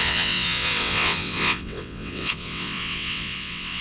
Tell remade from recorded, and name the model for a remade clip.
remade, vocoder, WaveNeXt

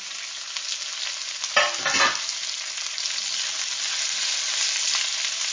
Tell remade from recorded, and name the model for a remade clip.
recorded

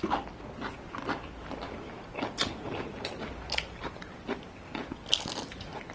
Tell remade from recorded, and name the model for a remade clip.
recorded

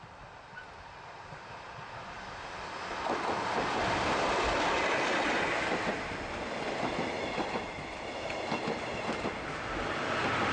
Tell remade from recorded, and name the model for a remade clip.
recorded